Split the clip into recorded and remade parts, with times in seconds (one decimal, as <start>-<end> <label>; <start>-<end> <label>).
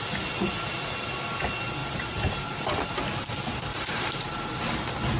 0.0-1.8 recorded; 1.8-2.3 remade; 2.3-3.7 recorded; 3.7-4.2 remade; 4.2-5.2 recorded